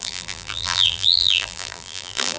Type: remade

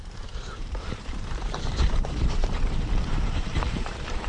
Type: remade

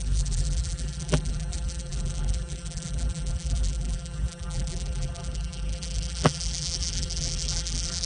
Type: remade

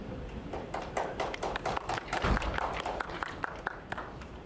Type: remade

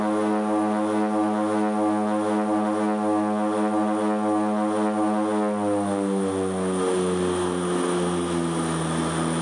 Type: recorded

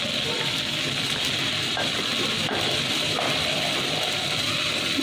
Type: recorded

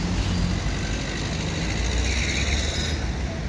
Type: recorded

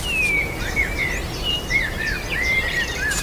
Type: recorded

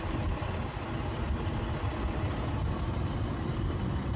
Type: recorded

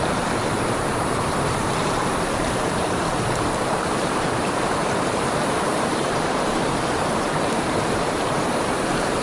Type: remade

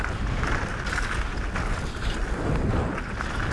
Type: recorded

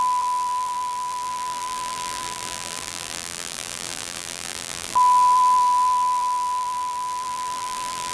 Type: remade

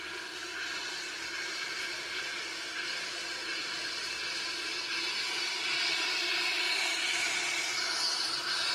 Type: remade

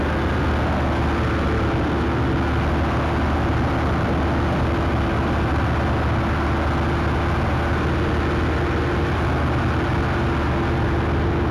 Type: recorded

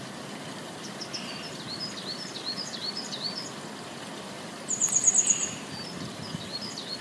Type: remade